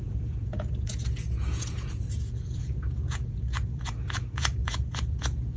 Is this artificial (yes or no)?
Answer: yes